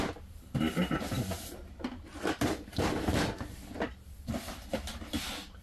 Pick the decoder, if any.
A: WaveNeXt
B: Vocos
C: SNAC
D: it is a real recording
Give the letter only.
D